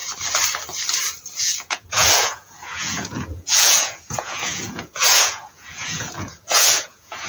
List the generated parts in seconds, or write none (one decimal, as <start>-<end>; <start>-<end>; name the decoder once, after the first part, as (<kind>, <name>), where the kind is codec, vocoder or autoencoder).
1.4-7.3 (vocoder, Vocos)